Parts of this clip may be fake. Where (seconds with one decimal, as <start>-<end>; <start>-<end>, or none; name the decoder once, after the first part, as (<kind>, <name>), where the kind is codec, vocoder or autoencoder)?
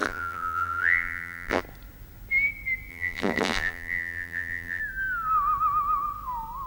0.0-1.6 (vocoder, BigVGAN v2); 2.9-4.8